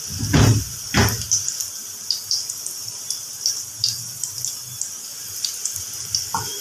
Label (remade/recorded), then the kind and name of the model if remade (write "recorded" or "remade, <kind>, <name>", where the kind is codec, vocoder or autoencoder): recorded